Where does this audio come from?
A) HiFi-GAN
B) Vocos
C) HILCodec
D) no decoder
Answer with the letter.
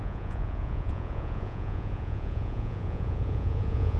B